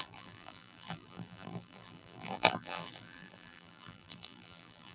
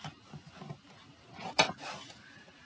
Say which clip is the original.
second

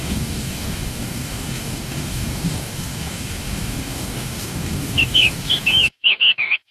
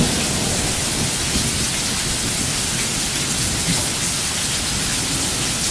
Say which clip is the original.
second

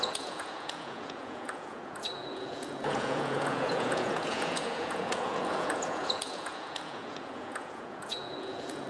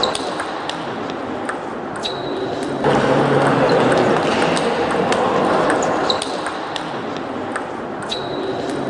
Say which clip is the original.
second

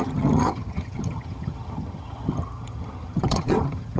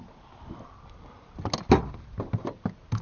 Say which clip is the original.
second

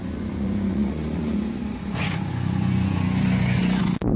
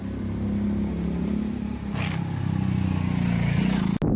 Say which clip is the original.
second